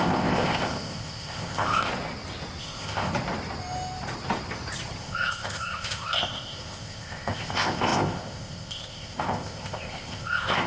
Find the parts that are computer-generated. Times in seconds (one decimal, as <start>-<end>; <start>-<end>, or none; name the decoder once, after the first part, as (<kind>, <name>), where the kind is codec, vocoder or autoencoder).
0.0-1.9 (codec, ZipCodec); 2.6-3.1; 5.0-10.7